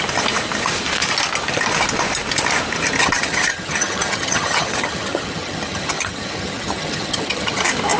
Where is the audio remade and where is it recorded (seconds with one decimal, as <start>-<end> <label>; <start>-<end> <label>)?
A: 0.0-3.0 recorded; 3.0-7.6 remade; 7.6-8.0 recorded